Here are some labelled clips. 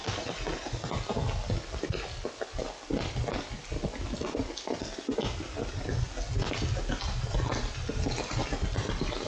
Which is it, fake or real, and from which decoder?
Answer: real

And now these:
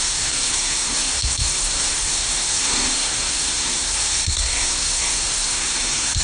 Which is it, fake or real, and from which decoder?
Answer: fake, codec, SNAC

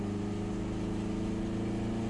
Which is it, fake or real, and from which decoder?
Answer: real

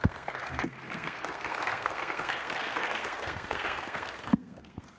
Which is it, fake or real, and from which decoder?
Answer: fake, codec, SNAC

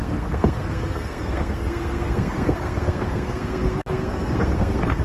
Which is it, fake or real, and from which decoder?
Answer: fake, codec, SNAC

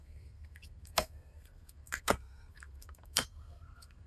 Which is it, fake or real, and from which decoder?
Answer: fake, codec, SNAC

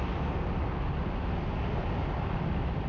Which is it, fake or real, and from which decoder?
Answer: real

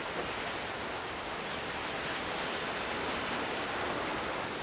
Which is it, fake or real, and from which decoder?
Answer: real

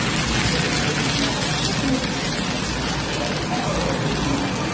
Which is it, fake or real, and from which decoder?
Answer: real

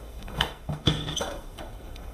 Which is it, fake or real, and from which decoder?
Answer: fake, codec, SNAC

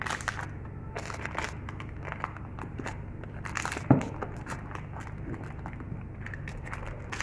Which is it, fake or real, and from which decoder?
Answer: real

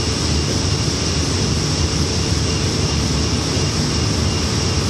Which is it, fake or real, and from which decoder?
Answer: real